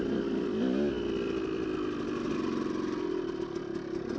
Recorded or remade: recorded